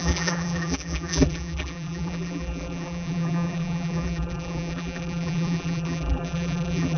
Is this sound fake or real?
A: fake